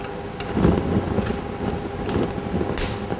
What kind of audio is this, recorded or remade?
recorded